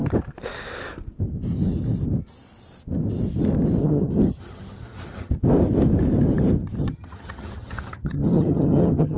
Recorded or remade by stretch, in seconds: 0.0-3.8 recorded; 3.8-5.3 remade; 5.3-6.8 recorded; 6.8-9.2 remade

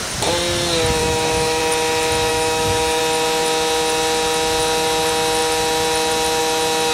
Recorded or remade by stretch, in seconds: 0.0-1.0 recorded; 1.0-1.6 remade; 1.6-2.3 recorded; 2.3-3.0 remade; 3.0-6.9 recorded